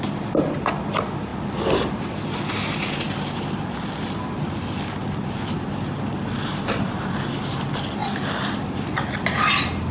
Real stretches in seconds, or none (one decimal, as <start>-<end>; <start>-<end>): 0.0-9.9